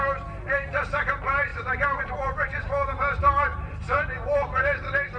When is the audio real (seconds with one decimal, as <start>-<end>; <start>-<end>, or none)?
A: 0.0-5.2